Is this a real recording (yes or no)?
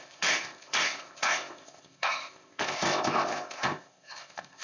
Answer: no